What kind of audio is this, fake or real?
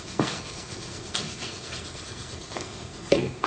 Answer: fake